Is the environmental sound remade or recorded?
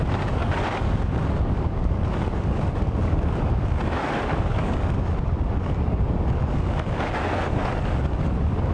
remade